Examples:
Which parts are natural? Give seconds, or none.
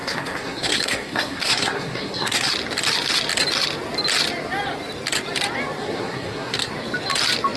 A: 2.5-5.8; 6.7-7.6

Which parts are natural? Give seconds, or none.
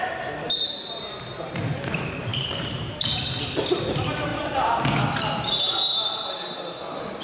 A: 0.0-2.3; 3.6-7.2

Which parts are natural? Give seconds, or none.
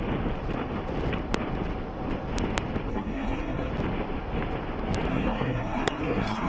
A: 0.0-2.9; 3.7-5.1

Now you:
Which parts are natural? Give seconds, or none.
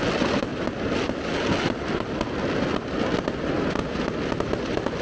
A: 0.0-5.0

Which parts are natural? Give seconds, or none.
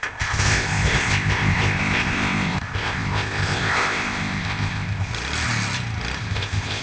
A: 5.1-6.2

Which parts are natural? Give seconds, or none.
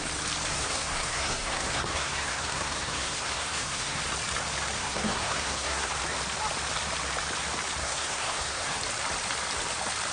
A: 0.0-0.5; 4.0-4.8; 5.9-7.8; 8.8-10.1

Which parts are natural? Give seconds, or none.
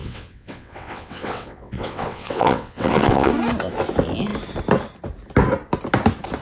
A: 3.3-6.4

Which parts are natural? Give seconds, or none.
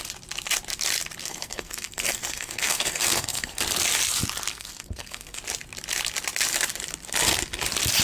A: 0.0-1.2; 3.6-4.5; 5.4-8.0